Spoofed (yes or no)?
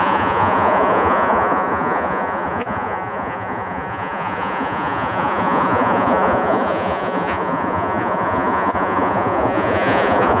yes